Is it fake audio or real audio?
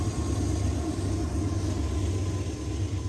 real